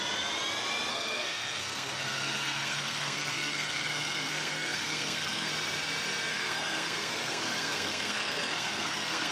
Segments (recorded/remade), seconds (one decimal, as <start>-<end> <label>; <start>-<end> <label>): 0.0-0.9 recorded; 0.9-5.5 remade; 5.5-6.3 recorded; 6.3-9.3 remade